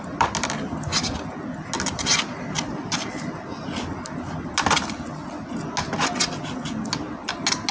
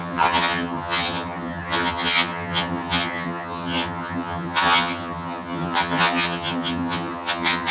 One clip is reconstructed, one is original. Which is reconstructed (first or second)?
second